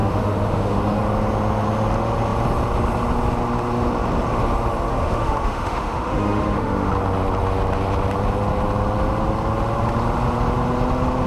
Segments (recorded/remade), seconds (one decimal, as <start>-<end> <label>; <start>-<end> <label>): 0.0-1.0 remade; 1.0-4.9 recorded; 4.9-6.9 remade; 6.9-11.3 recorded